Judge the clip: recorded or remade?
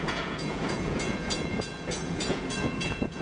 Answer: remade